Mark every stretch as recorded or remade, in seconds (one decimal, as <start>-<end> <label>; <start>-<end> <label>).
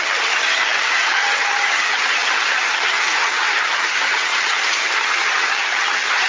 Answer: 0.0-6.3 remade